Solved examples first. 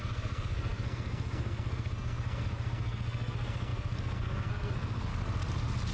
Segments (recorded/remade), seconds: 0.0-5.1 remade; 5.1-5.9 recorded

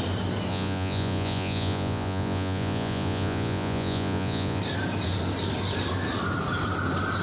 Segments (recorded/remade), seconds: 0.0-0.5 recorded; 0.5-4.6 remade; 4.6-7.2 recorded

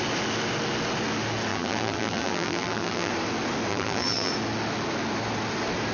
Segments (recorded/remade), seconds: 0.0-1.5 recorded; 1.5-3.1 remade; 3.1-3.7 recorded; 3.7-4.3 remade; 4.3-5.9 recorded

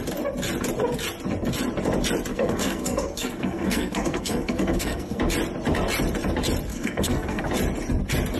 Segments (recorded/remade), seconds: 0.0-2.3 recorded; 2.3-5.2 remade; 5.2-6.7 recorded; 6.7-7.4 remade; 7.4-8.4 recorded